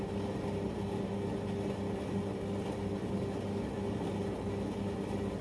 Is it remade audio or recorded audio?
recorded